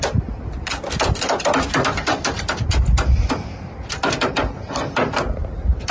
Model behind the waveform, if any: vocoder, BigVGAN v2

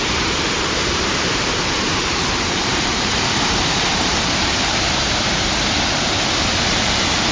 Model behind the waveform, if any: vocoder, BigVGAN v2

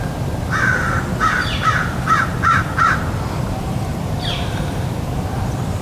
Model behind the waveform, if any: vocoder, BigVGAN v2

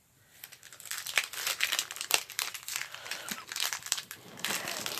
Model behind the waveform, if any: vocoder, BigVGAN v2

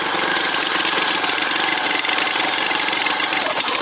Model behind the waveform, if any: vocoder, BigVGAN v2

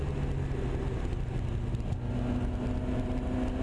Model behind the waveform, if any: none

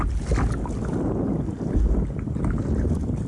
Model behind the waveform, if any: none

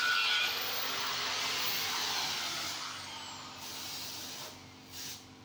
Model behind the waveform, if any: none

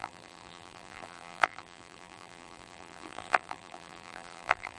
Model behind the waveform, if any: vocoder, BigVGAN v2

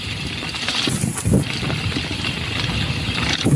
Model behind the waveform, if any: vocoder, BigVGAN v2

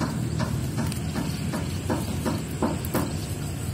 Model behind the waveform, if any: none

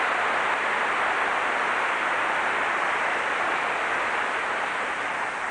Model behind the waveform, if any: none